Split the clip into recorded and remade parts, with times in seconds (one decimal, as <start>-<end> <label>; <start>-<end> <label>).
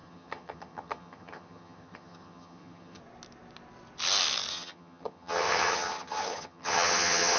0.0-3.0 remade; 3.0-4.5 recorded; 4.5-7.4 remade